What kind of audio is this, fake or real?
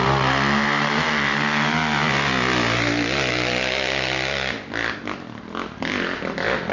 real